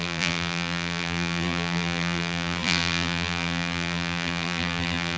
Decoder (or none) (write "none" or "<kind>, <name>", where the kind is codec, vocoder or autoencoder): vocoder, BigVGAN v2